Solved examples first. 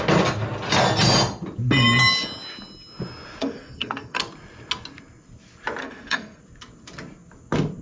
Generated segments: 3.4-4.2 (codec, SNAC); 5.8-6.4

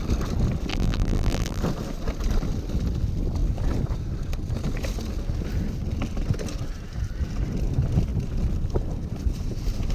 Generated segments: 0.7-1.6 (vocoder, BigVGAN v2)

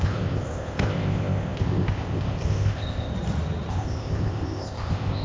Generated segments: 0.0-3.1 (codec, ZipCodec); 3.7-5.2

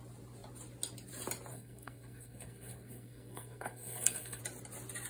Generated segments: 1.5-4.4 (codec, SNAC)

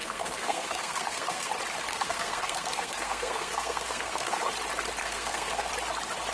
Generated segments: 0.0-1.5 (codec, SNAC); 1.9-4.4; 5.0-5.7

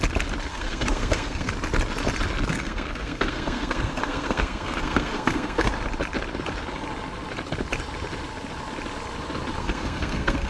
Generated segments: 0.5-1.5 (codec, SNAC); 2.5-5.7; 9.6-10.5

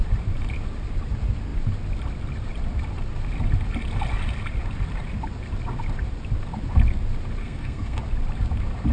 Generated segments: 7.4-8.0 (codec, SNAC)